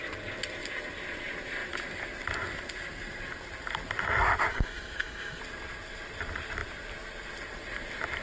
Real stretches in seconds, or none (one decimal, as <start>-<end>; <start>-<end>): 0.0-4.5; 5.4-8.2